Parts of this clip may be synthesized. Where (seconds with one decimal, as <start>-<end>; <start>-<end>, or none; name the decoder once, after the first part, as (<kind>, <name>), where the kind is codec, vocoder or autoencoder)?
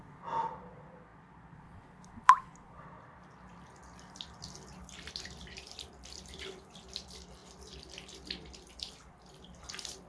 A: 0.0-1.1 (vocoder, BigVGAN v2); 2.2-7.4; 8.7-10.1